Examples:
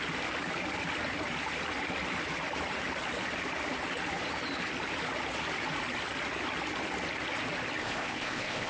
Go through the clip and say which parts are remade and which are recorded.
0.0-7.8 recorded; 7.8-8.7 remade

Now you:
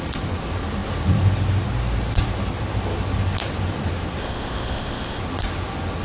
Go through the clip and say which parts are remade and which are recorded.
0.0-4.2 recorded; 4.2-5.2 remade; 5.2-6.0 recorded

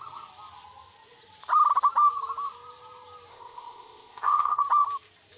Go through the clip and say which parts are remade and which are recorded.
0.0-3.3 recorded; 3.3-4.6 remade; 4.6-5.4 recorded

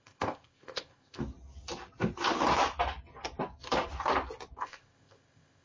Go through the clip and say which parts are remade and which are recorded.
0.0-1.2 remade; 1.2-4.6 recorded; 4.6-5.6 remade